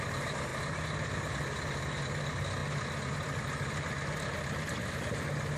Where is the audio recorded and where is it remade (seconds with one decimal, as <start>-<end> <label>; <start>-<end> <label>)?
0.0-5.6 recorded